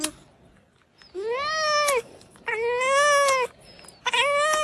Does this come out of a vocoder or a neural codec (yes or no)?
no